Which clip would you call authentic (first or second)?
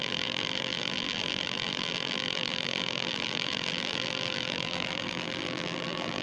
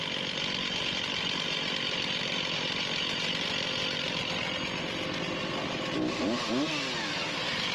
second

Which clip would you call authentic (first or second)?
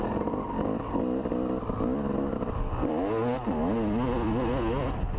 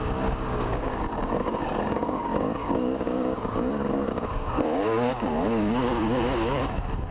first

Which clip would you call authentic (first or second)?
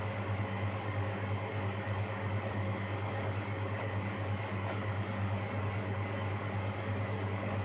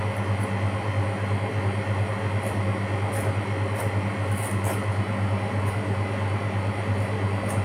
second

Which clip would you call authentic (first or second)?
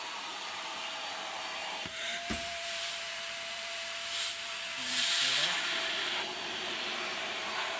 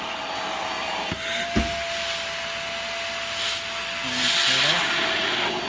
second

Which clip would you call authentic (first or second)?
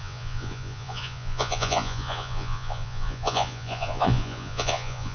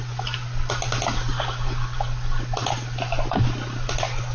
second